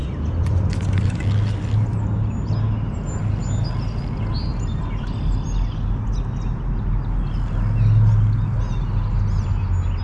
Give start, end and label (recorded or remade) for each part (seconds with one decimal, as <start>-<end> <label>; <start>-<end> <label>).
0.0-1.2 remade; 1.2-10.0 recorded

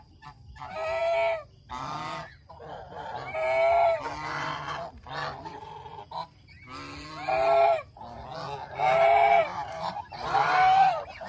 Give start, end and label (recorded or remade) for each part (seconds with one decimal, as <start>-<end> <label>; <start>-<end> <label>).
0.0-9.5 recorded; 9.5-10.9 remade; 10.9-11.3 recorded

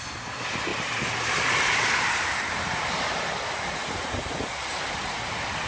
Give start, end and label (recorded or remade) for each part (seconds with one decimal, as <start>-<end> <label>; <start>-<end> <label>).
0.0-0.7 remade; 0.7-1.5 recorded; 1.5-5.7 remade

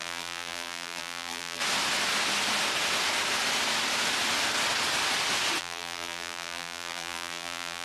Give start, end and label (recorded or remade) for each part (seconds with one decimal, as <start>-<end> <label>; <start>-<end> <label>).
0.0-1.6 remade; 1.6-5.6 recorded; 5.6-7.8 remade

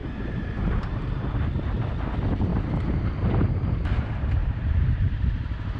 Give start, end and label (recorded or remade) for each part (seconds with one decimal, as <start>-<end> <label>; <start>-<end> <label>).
0.0-1.3 remade; 1.3-2.5 recorded; 2.5-3.8 remade; 3.8-4.4 recorded; 4.4-5.2 remade; 5.2-5.8 recorded